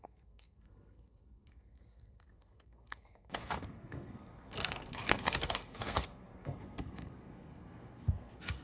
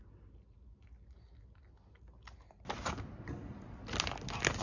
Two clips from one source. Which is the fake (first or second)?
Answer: first